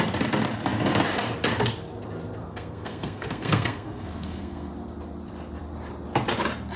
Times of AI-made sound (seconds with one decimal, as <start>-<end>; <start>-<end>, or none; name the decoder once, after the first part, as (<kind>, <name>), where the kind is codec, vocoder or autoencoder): 2.4-4.7 (codec, SNAC)